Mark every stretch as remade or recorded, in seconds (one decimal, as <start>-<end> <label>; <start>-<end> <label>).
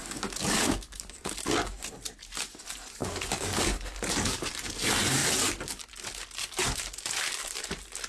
0.0-1.4 remade; 1.4-3.0 recorded; 3.0-4.5 remade; 4.5-8.1 recorded